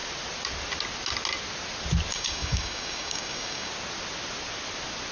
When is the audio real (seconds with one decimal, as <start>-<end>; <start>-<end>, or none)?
0.0-2.1; 3.7-5.1